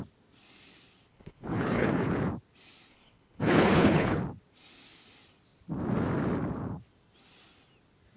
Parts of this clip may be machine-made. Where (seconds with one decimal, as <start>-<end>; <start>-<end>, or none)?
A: 1.1-2.1; 2.9-4.2